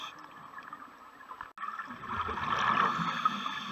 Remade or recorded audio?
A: recorded